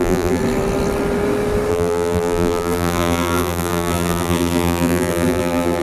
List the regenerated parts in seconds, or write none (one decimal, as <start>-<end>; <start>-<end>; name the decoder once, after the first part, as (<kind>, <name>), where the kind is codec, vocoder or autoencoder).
0.0-0.4 (vocoder, BigVGAN v2); 1.7-5.8